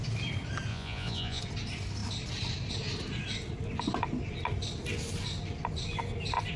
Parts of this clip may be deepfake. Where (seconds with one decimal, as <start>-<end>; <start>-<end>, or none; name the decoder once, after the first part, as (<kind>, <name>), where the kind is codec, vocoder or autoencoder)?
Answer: 0.7-1.4 (vocoder, Vocos)